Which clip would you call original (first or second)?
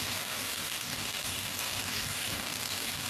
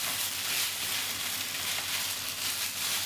second